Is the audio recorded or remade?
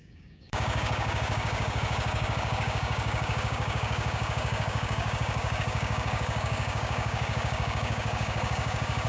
remade